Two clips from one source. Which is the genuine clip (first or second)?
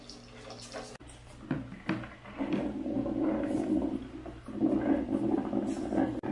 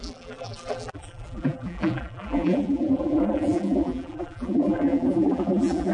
first